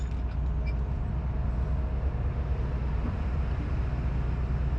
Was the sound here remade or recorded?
recorded